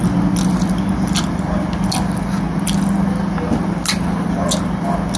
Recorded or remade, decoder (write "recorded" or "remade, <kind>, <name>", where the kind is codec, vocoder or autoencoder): recorded